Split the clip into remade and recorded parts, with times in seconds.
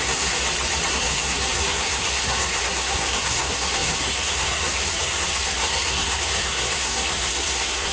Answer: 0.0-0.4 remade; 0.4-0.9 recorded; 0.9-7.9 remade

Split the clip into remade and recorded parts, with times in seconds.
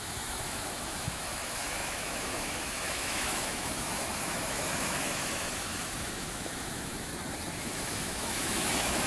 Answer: 0.0-7.1 remade; 7.1-7.6 recorded; 7.6-9.1 remade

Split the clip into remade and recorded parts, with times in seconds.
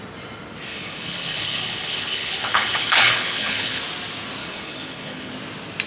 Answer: 0.0-0.7 recorded; 0.7-3.8 remade; 3.8-4.4 recorded; 4.4-5.3 remade; 5.3-5.9 recorded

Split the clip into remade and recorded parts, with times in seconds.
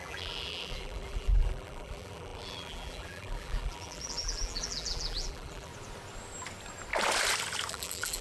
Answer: 0.0-5.7 remade; 5.7-7.7 recorded; 7.7-8.2 remade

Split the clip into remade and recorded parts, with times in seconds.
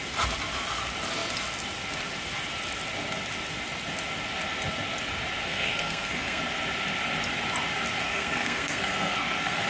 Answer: 0.0-5.4 recorded; 5.4-6.4 remade; 6.4-8.0 recorded; 8.0-9.7 remade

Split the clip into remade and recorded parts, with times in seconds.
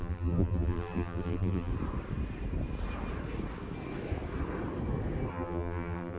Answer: 0.0-1.7 remade; 1.7-5.3 recorded; 5.3-6.2 remade